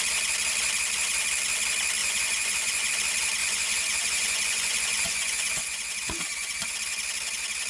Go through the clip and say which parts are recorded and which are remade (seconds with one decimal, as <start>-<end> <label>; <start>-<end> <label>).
0.0-2.0 recorded; 2.0-2.9 remade; 2.9-3.4 recorded; 3.4-6.7 remade; 6.7-7.7 recorded